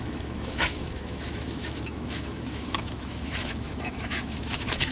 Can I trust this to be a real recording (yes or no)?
no